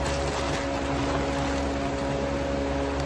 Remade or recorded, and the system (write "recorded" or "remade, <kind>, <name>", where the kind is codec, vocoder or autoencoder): recorded